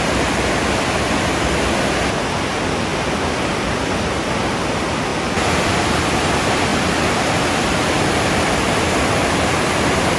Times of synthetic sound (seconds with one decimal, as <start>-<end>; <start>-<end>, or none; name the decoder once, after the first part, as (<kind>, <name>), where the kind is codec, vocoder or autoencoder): none